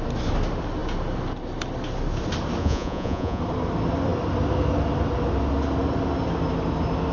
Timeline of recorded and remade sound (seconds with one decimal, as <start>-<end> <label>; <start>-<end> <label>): 0.0-2.6 recorded; 2.6-3.4 remade; 3.4-7.1 recorded